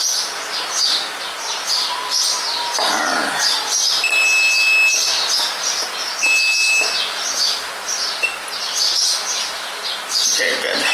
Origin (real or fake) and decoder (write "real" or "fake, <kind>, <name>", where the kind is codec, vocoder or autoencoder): real